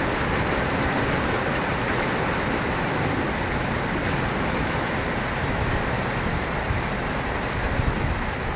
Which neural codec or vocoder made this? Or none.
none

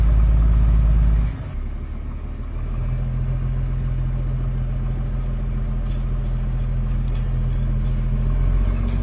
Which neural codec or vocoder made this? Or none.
none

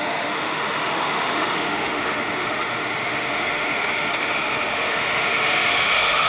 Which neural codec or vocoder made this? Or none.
autoencoder, DAC-VAE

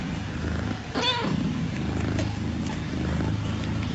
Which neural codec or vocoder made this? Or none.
none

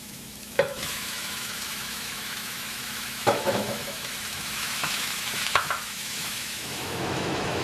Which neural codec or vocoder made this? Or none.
autoencoder, DAC-VAE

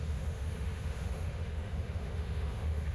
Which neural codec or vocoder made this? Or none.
autoencoder, DAC-VAE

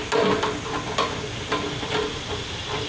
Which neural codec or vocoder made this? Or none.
none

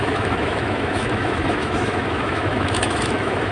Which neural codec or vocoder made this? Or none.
autoencoder, DAC-VAE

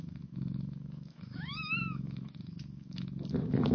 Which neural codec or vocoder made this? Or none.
autoencoder, DAC-VAE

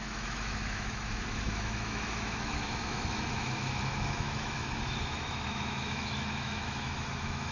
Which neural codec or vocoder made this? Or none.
autoencoder, DAC-VAE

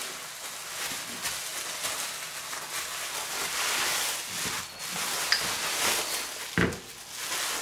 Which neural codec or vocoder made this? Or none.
none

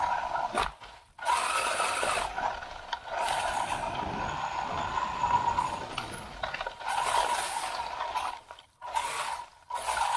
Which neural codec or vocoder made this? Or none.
none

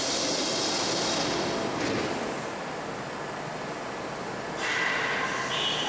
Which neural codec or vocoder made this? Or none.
none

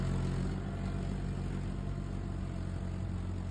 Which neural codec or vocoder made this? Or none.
none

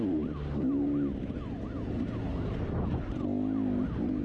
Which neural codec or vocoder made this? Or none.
none